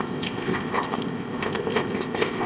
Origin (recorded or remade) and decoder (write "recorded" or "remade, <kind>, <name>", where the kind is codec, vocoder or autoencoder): remade, codec, ZipCodec